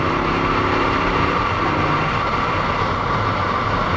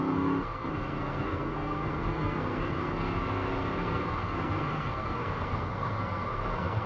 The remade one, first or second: second